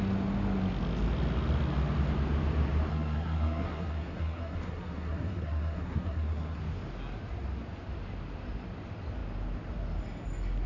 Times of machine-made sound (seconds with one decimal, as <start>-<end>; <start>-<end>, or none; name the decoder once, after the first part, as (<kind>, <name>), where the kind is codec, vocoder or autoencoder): 2.9-6.6 (codec, SNAC)